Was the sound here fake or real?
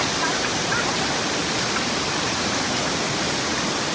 real